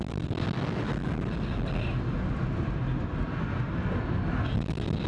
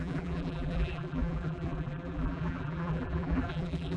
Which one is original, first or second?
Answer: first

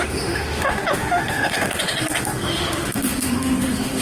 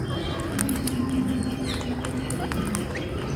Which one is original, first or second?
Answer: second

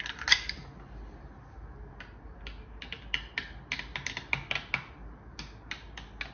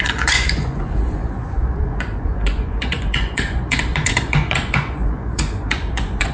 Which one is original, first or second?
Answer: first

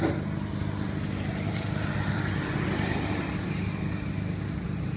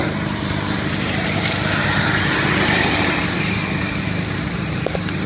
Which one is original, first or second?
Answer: first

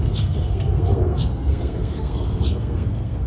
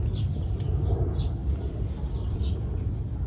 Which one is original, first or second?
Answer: second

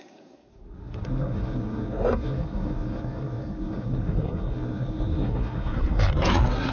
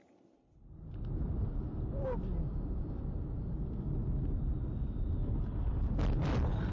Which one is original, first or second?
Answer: second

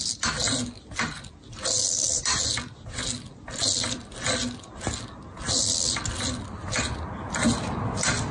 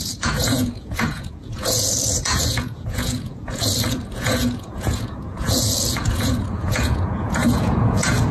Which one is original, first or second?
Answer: first